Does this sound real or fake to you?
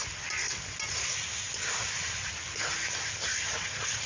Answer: real